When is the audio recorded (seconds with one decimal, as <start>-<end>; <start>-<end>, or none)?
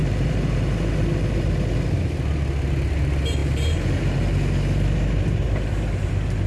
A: 0.0-6.5